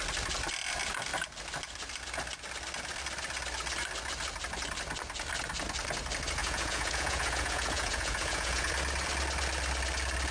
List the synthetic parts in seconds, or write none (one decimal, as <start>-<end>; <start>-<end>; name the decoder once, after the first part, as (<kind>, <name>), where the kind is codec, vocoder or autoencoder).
6.4-8.7 (vocoder, Vocos)